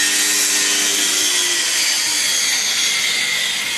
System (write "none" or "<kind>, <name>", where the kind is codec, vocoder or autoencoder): none